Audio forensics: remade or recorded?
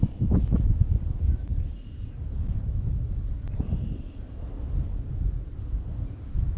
recorded